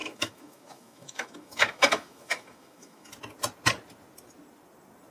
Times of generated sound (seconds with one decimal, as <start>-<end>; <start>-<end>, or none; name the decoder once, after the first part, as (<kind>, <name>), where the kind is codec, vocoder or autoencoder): 0.0-3.1 (autoencoder, DAC-VAE)